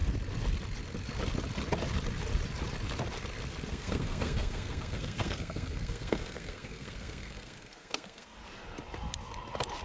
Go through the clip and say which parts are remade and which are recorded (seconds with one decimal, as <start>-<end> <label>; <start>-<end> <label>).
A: 0.0-3.7 recorded; 3.7-8.4 remade; 8.4-9.8 recorded